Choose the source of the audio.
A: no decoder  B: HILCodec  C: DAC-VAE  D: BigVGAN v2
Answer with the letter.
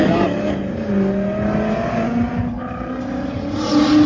A